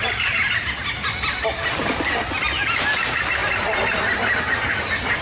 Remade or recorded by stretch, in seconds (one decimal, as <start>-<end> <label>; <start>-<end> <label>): 0.0-5.2 recorded